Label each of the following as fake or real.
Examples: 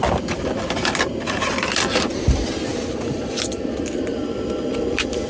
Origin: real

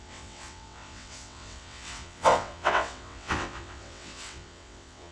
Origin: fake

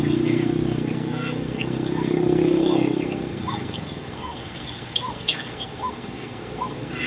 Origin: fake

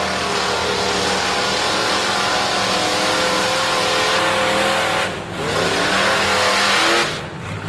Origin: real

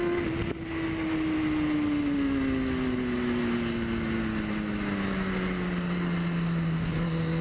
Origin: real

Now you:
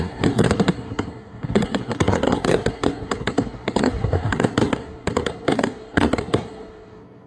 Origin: fake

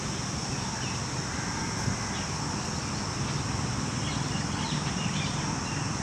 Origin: real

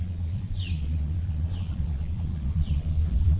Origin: fake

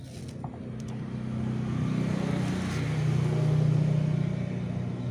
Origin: real